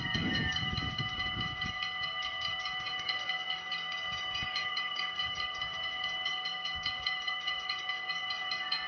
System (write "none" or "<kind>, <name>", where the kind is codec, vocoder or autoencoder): codec, DAC